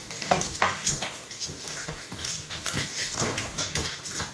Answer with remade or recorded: remade